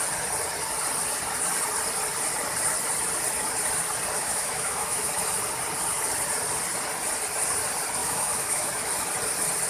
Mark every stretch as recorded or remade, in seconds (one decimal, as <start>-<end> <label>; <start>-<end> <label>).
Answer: 0.0-4.2 recorded; 4.2-5.1 remade; 5.1-8.0 recorded; 8.0-8.9 remade; 8.9-9.7 recorded